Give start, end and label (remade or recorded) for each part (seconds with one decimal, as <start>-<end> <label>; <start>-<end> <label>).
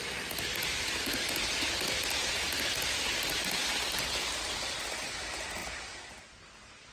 0.0-6.9 recorded